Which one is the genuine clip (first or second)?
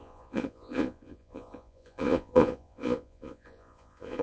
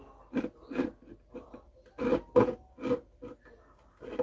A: second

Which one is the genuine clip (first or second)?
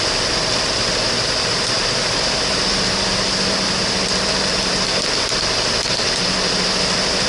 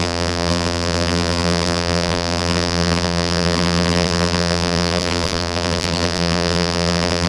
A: first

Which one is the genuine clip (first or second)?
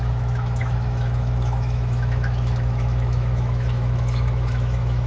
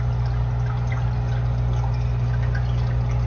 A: second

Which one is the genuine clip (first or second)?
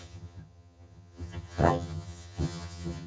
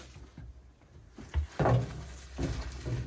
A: second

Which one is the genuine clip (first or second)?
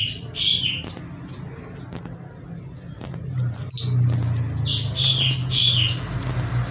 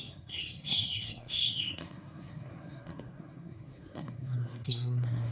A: first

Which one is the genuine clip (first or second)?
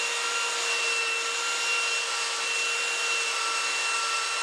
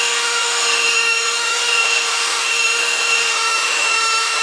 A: first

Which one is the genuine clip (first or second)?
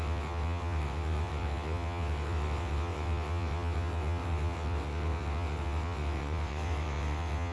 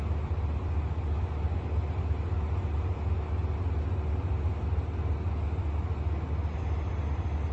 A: second